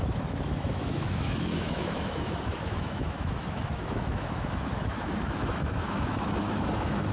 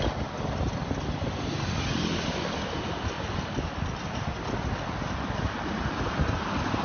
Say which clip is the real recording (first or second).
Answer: second